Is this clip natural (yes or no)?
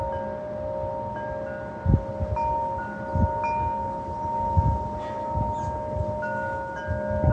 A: yes